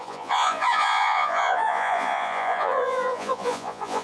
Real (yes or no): no